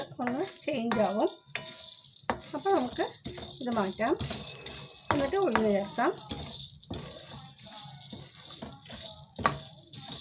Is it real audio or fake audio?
real